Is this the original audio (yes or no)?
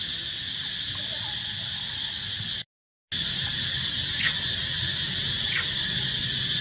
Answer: yes